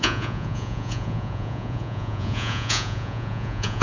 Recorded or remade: remade